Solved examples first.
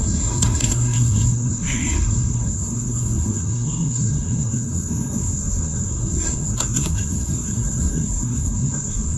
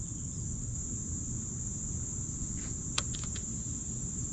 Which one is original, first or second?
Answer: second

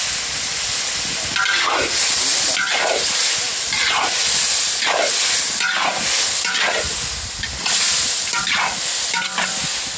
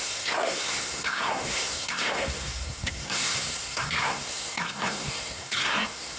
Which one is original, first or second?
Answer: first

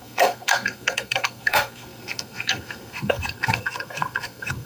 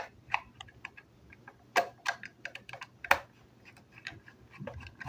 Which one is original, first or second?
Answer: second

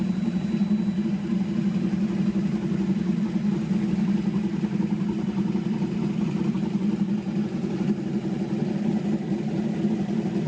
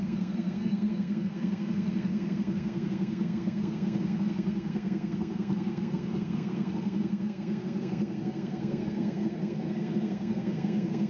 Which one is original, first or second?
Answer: first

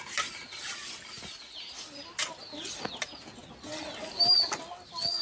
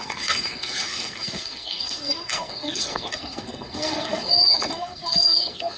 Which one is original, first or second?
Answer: first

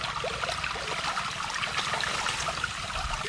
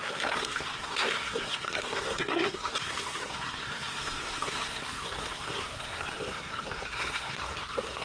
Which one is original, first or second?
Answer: first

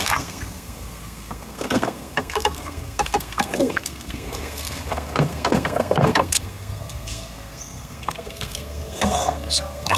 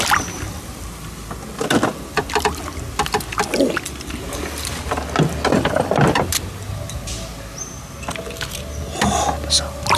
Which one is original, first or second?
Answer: second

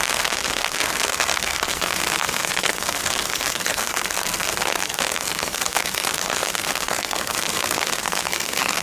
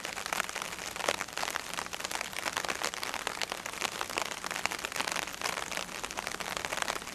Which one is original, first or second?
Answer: second